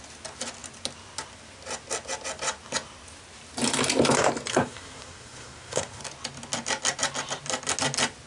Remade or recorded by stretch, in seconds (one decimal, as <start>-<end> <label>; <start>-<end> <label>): 0.0-4.5 recorded; 4.5-6.0 remade; 6.0-8.3 recorded